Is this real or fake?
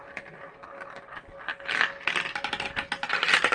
real